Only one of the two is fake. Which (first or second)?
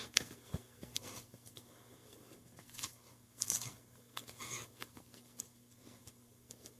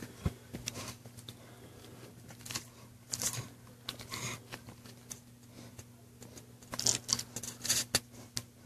first